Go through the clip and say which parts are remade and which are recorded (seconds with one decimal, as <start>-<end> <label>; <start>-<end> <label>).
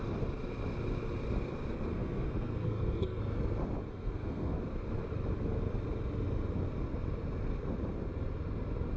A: 0.0-1.9 recorded; 1.9-3.2 remade; 3.2-3.9 recorded; 3.9-4.6 remade; 4.6-9.0 recorded